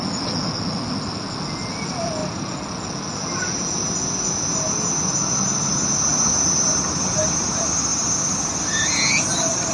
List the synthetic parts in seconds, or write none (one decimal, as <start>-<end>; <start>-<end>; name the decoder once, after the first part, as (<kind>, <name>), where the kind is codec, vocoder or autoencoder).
none